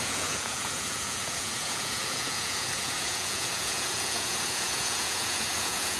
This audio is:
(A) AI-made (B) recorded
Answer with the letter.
A